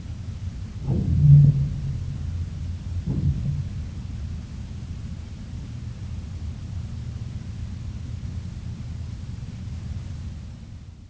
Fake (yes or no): no